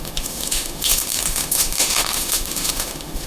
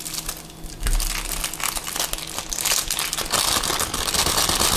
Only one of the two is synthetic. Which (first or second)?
first